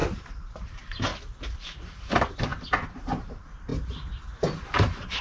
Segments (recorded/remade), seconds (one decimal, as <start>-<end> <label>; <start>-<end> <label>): 0.0-1.1 remade; 1.1-2.1 recorded; 2.1-2.5 remade; 2.5-3.2 recorded; 3.2-5.2 remade